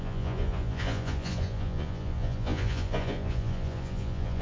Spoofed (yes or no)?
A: yes